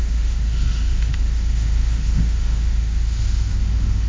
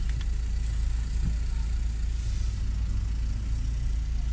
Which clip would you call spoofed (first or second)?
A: first